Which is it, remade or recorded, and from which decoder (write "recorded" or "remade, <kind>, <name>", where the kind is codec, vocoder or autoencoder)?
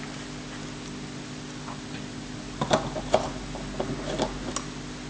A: recorded